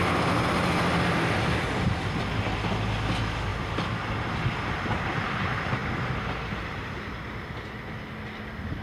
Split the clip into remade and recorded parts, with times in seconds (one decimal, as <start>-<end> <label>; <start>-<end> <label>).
0.0-8.8 recorded